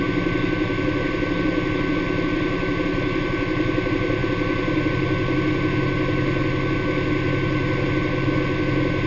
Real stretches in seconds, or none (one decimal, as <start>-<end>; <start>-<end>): 0.0-9.1